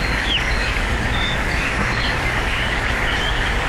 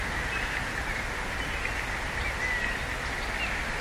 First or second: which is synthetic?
first